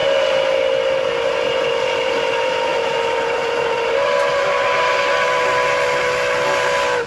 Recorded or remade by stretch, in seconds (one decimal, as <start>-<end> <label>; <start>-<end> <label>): 0.0-2.7 recorded; 2.7-5.0 remade; 5.0-7.1 recorded